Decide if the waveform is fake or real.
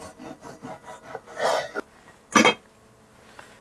real